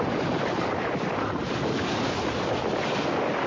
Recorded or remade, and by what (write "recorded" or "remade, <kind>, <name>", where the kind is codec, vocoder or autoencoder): recorded